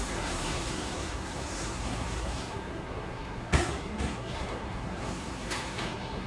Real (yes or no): no